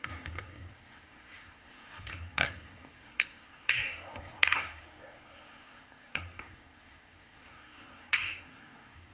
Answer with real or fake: fake